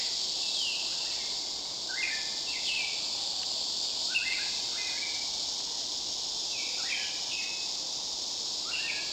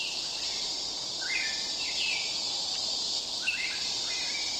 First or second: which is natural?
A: first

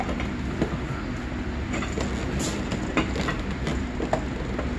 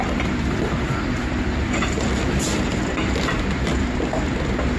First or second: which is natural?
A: first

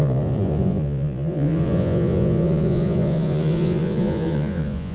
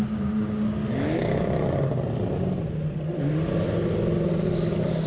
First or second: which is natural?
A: second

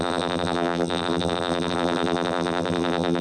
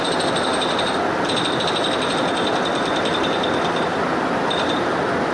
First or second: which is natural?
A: second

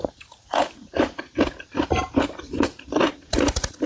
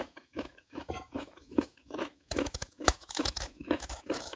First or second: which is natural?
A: first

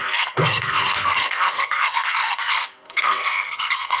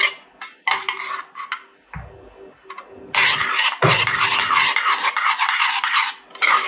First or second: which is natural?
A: second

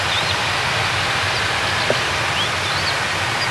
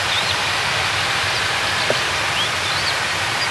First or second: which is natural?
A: first